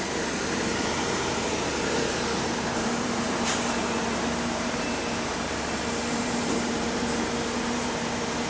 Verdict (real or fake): fake